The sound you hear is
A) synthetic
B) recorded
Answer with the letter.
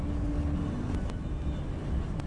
B